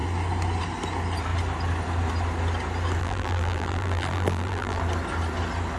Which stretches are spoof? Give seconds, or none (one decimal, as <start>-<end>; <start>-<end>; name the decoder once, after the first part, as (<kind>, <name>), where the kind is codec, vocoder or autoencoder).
3.0-4.8 (vocoder, BigVGAN v2)